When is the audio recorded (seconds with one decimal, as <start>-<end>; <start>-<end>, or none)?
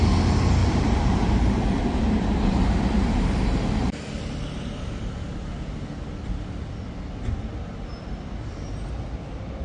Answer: 0.0-0.6; 4.0-9.6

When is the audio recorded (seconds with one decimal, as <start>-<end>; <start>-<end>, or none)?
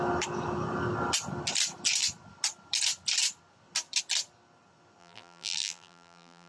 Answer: 0.0-5.0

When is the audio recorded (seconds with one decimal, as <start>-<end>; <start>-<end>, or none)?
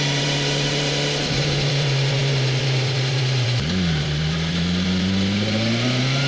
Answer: none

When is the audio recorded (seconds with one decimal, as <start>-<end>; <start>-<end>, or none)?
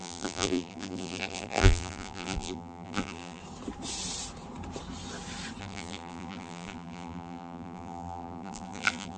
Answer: 3.4-5.6